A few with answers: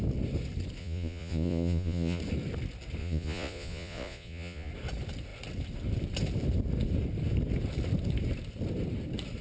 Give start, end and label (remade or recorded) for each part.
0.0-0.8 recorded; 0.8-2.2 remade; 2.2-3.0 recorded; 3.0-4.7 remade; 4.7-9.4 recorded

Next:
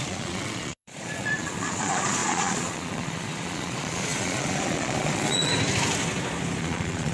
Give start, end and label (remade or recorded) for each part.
0.0-5.5 remade; 5.5-6.6 recorded; 6.6-7.1 remade

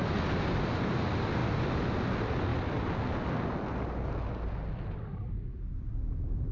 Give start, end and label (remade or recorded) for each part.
0.0-6.5 recorded